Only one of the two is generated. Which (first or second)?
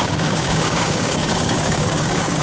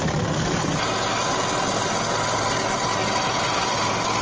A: first